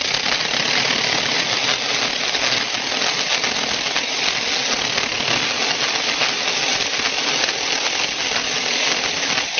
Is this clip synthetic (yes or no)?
no